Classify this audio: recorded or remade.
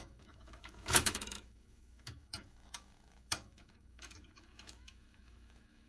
remade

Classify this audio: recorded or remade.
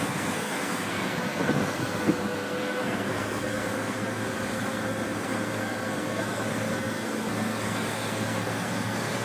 remade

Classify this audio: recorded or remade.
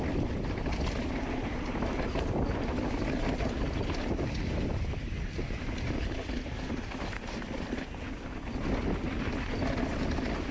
remade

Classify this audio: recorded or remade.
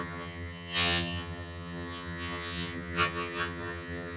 remade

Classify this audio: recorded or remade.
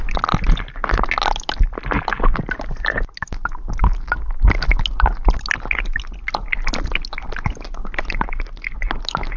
recorded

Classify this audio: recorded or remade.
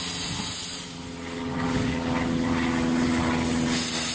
recorded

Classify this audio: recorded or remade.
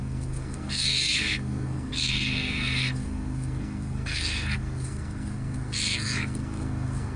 remade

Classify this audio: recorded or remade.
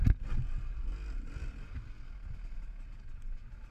recorded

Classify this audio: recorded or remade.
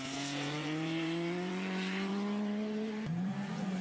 remade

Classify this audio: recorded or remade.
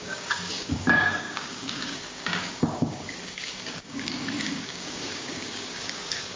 remade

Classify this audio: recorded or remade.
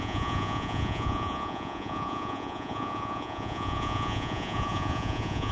remade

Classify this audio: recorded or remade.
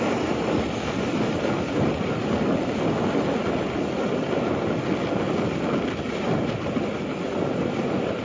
recorded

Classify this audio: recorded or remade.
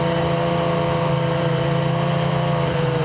remade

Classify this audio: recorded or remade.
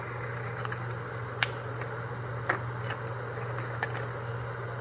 recorded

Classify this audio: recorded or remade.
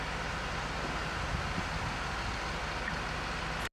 recorded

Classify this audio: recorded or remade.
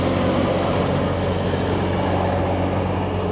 recorded